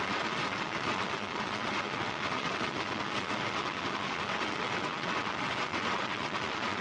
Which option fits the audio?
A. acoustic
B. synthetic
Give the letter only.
B